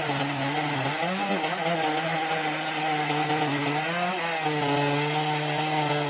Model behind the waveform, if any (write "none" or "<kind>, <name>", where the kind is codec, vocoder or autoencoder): none